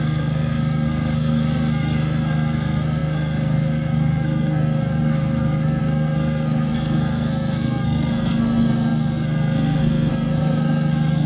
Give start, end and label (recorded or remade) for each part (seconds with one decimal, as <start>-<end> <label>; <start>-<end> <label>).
0.0-11.3 remade